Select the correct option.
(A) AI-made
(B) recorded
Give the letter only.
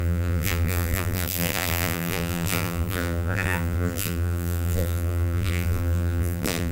A